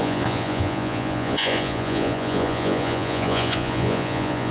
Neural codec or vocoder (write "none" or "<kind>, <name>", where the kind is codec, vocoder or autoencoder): vocoder, Vocos